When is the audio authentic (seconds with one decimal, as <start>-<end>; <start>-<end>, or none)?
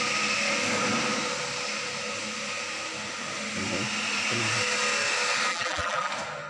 0.0-5.5; 6.1-6.5